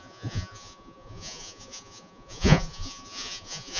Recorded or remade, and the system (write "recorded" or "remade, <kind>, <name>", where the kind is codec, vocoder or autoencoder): remade, vocoder, Vocos